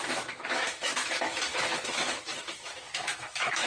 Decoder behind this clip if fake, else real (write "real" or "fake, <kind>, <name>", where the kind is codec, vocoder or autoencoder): fake, autoencoder, DAC-VAE